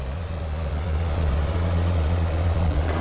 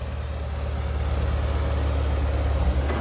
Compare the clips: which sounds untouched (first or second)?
second